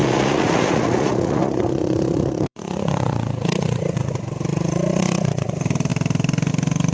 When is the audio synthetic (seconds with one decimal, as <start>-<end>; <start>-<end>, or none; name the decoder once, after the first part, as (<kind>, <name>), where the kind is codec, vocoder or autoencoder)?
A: 0.0-4.1 (vocoder, Vocos); 4.5-5.5